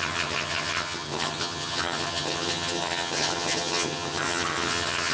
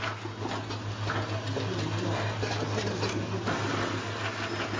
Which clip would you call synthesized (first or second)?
first